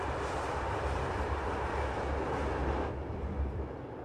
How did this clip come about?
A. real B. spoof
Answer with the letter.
A